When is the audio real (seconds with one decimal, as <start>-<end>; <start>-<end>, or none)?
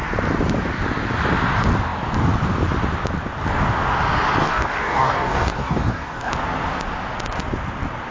0.0-4.4; 6.3-8.1